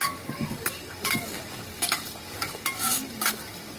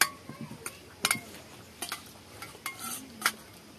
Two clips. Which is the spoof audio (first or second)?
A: first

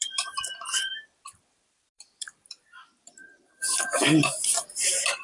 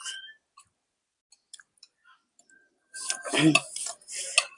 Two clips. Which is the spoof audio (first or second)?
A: first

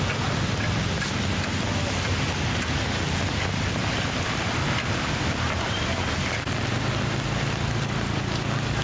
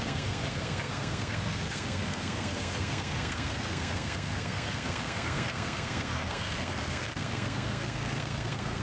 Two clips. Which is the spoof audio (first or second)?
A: second